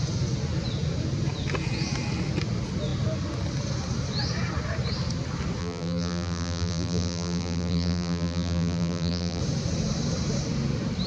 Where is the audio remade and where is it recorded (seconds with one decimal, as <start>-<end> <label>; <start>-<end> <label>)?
0.0-5.6 recorded; 5.6-9.4 remade; 9.4-11.1 recorded